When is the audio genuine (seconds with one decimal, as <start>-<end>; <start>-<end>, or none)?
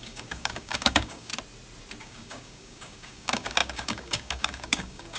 1.3-2.0